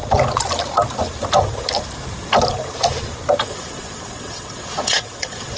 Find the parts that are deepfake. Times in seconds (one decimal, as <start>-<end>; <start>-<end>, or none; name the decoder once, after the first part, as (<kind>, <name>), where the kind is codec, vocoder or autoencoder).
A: 3.4-5.6 (vocoder, WaveNeXt)